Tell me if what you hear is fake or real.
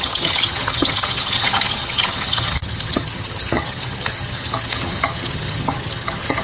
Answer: fake